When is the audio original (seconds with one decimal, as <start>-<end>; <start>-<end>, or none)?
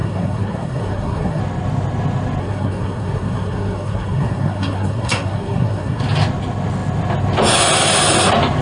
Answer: 1.4-2.4; 6.0-8.6